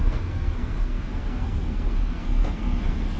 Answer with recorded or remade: remade